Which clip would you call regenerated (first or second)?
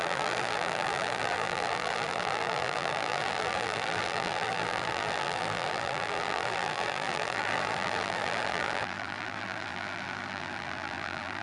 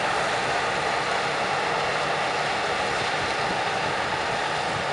first